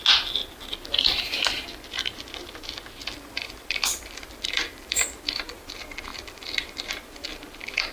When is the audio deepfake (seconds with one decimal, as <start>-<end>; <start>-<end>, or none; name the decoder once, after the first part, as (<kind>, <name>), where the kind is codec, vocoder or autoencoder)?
3.0-5.0 (vocoder, BigVGAN v2); 6.1-6.9